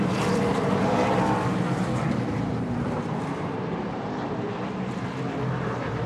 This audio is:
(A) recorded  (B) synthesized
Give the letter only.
B